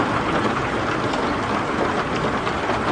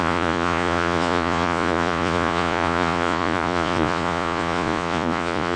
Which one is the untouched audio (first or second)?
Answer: first